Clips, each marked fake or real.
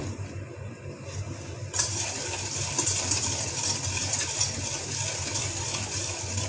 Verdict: real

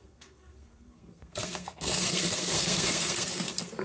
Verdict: fake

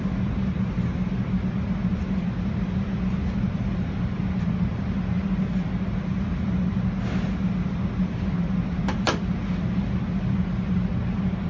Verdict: real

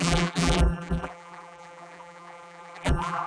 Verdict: fake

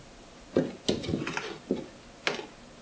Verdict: real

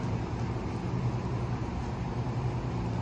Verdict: real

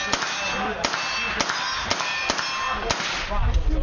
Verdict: real